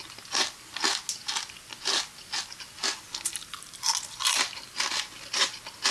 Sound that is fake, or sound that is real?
real